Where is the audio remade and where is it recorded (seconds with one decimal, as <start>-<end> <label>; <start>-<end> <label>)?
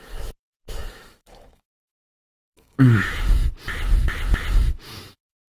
0.0-3.4 remade; 3.4-4.5 recorded; 4.5-5.5 remade